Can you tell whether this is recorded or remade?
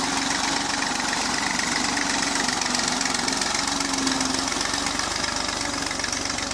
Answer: recorded